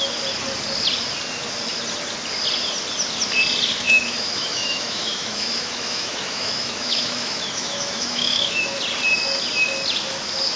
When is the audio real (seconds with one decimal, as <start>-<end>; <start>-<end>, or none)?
0.0-3.8; 8.8-10.6